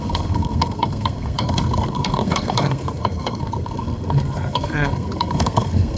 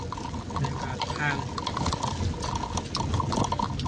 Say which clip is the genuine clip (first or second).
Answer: second